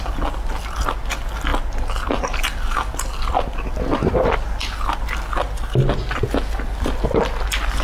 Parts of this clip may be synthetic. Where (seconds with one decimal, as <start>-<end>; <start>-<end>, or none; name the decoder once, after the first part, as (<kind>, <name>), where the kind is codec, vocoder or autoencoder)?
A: none